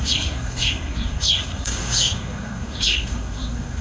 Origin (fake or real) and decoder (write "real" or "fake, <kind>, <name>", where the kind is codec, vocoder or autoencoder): fake, codec, SNAC